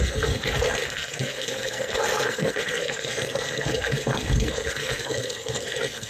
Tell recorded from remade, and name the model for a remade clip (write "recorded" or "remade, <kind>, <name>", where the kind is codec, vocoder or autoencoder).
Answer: remade, codec, SNAC